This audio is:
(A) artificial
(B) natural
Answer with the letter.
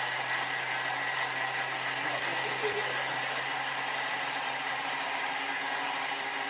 B